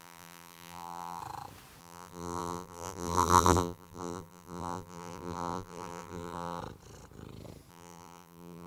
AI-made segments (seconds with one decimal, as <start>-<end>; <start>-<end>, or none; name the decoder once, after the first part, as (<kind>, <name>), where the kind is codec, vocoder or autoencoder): 0.0-1.2 (vocoder, BigVGAN v2); 1.8-6.6; 7.7-8.7